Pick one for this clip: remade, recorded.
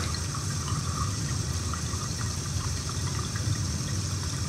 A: remade